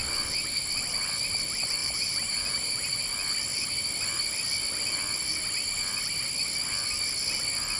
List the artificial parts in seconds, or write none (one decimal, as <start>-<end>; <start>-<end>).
1.8-3.0